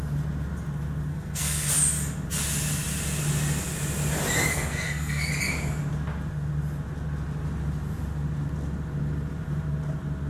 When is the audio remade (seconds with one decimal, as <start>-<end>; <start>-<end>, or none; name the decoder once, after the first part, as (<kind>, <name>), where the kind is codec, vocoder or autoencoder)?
1.1-1.7 (codec, SNAC); 4.5-5.3